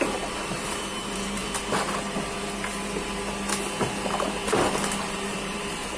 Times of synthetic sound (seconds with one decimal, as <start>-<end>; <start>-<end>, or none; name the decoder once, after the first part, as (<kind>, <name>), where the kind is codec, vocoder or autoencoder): 0.0-1.4 (vocoder, BigVGAN v2); 5.0-6.0